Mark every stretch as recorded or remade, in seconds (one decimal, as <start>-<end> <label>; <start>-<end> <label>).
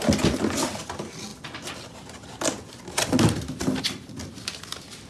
0.0-5.1 recorded